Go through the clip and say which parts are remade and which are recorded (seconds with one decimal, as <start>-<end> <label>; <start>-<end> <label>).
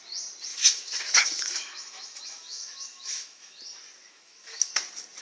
0.0-0.5 recorded; 0.5-3.6 remade; 3.6-4.0 recorded; 4.0-4.7 remade; 4.7-5.2 recorded